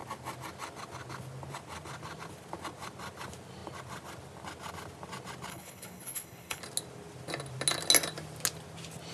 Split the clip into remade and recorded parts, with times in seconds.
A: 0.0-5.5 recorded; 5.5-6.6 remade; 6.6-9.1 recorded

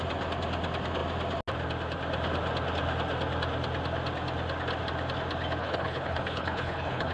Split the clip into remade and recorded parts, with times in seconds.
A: 0.0-5.6 recorded; 5.6-7.1 remade